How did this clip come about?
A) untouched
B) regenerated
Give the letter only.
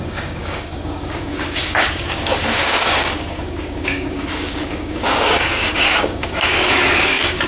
B